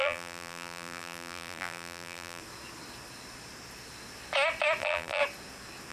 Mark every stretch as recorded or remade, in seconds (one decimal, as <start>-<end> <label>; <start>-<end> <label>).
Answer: 0.0-2.4 remade; 2.4-4.8 recorded; 4.8-5.2 remade; 5.2-5.9 recorded